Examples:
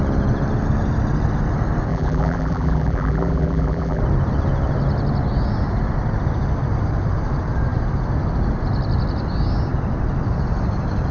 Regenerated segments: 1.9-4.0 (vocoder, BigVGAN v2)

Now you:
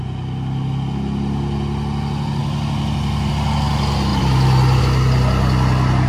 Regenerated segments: 4.1-4.8 (vocoder, BigVGAN v2)

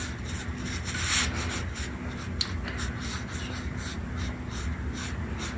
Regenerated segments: none

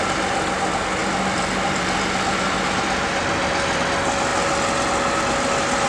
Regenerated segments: 1.0-3.8 (vocoder, BigVGAN v2)

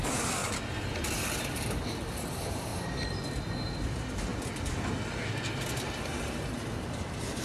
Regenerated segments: 0.0-0.4 (vocoder, BigVGAN v2); 1.4-2.7; 3.9-4.3; 5.7-7.4

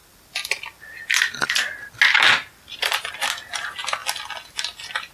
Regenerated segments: none